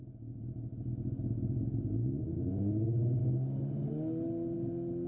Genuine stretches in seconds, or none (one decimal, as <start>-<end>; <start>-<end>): 0.0-5.1

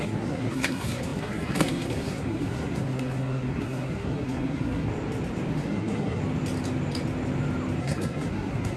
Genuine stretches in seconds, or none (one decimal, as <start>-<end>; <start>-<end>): 4.9-5.5; 6.2-7.8